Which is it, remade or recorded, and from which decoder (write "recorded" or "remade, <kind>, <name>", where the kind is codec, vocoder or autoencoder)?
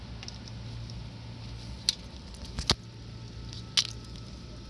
recorded